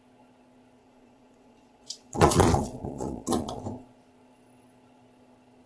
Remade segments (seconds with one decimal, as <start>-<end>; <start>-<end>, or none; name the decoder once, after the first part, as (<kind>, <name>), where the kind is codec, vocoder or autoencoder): 0.8-3.6 (vocoder, Vocos)